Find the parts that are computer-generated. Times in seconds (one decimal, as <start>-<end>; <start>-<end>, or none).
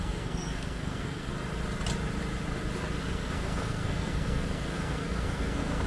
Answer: 0.0-1.3; 3.0-5.9